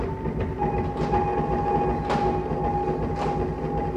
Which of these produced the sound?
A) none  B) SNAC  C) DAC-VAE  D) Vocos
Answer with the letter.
A